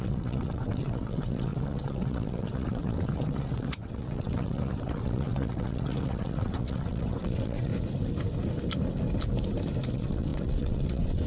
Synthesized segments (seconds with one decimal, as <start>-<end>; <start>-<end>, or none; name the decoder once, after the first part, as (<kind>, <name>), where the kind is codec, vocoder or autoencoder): 0.0-7.7 (vocoder, WaveNeXt); 9.9-11.3

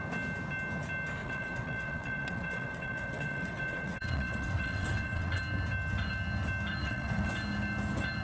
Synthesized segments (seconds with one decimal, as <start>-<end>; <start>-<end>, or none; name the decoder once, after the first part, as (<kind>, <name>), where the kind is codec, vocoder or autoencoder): 1.2-5.4 (vocoder, WaveNeXt); 6.8-7.3